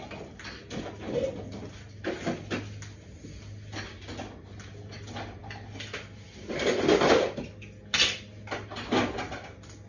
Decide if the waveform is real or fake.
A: real